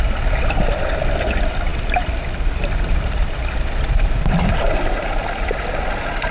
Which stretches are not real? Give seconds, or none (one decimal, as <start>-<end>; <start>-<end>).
none